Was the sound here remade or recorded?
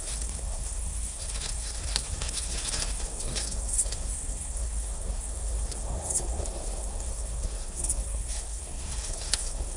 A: remade